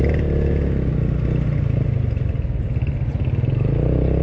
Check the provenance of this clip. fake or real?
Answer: real